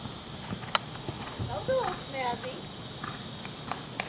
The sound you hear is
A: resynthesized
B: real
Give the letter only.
B